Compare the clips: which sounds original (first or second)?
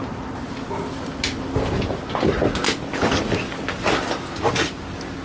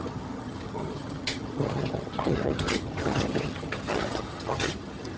first